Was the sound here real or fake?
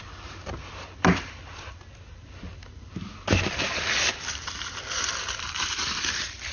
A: fake